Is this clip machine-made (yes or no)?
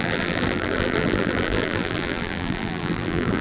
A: yes